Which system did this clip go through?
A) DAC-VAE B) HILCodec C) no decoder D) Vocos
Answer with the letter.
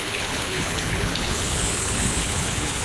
B